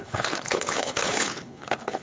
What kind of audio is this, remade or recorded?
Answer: remade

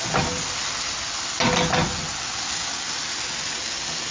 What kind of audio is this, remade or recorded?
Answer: recorded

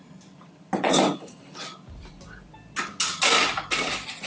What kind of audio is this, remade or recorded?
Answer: recorded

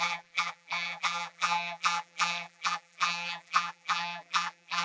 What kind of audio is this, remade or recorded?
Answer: remade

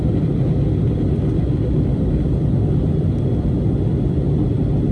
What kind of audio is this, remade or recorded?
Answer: recorded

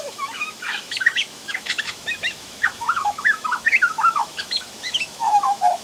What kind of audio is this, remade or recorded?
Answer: remade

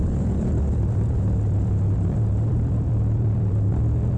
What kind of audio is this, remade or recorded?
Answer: remade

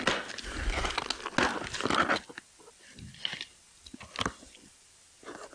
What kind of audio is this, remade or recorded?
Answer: recorded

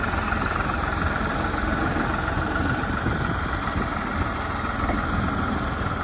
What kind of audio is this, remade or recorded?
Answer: recorded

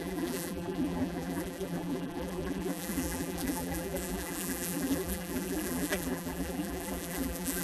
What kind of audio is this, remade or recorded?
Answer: remade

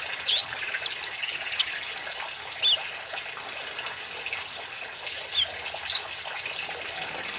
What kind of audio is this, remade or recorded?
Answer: recorded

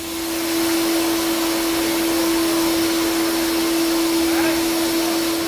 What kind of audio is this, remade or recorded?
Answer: recorded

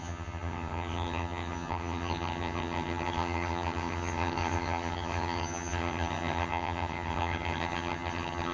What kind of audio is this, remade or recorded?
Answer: remade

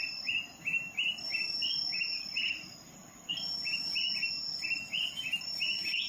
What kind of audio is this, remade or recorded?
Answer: recorded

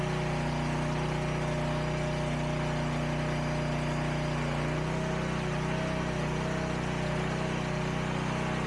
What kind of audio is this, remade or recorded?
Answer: recorded